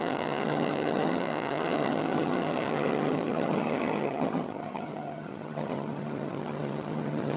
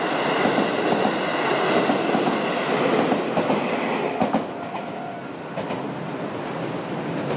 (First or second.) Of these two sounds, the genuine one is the second